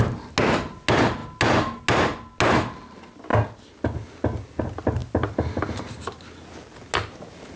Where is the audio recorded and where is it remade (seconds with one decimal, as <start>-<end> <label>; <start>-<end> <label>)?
0.0-7.6 recorded